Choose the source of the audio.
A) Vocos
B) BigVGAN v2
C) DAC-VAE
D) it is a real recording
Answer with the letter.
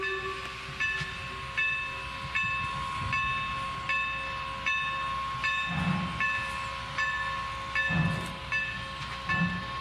D